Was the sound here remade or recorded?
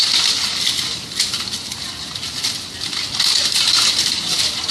recorded